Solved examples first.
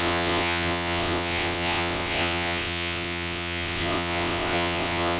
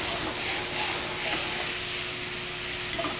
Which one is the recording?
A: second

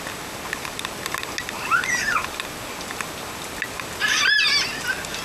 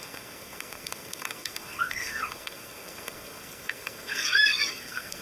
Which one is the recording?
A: first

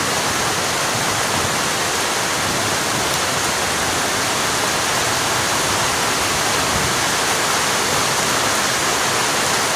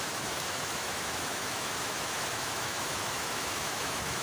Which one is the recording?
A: first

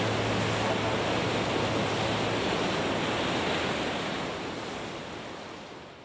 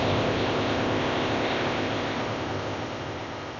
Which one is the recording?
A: first